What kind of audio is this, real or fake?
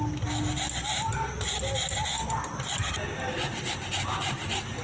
real